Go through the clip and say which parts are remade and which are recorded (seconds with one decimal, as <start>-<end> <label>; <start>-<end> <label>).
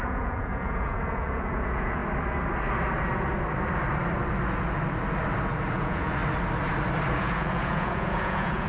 0.0-2.0 remade; 2.0-5.7 recorded; 5.7-6.2 remade; 6.2-7.1 recorded; 7.1-8.7 remade